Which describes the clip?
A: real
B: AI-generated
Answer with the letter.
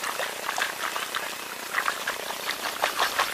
A